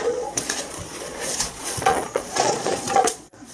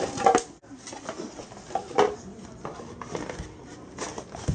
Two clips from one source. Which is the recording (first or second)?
second